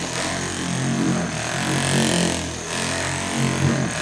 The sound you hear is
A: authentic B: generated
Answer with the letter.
A